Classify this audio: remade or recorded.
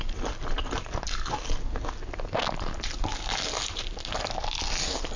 recorded